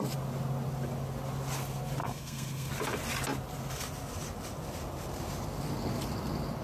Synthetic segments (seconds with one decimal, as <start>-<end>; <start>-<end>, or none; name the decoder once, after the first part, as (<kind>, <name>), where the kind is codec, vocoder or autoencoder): 2.0-2.7 (codec, SNAC)

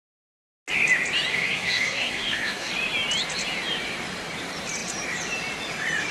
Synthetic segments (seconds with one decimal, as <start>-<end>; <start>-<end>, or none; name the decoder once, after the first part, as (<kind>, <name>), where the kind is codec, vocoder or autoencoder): 1.3-2.7 (codec, SNAC)

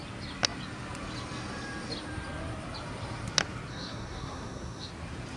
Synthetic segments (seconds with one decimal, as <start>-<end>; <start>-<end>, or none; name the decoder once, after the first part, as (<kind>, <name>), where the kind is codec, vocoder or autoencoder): 3.7-4.9 (codec, SNAC)